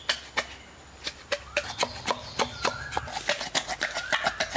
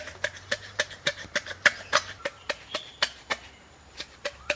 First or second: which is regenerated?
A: second